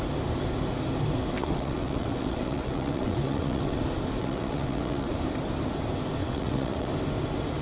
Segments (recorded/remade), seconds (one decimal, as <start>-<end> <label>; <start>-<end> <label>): 0.0-1.4 recorded; 1.4-3.8 remade; 3.8-4.2 recorded; 4.2-5.1 remade; 5.1-6.2 recorded; 6.2-6.9 remade; 6.9-7.6 recorded